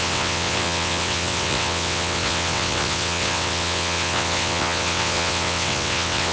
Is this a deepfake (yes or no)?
yes